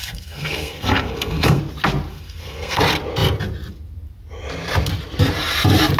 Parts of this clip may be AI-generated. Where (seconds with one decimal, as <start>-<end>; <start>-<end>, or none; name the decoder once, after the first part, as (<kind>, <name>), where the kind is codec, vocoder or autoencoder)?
0.0-1.6 (codec, SNAC); 2.1-2.8